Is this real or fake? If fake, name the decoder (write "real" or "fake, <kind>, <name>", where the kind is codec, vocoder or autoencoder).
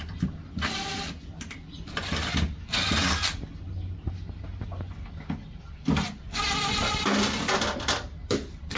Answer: real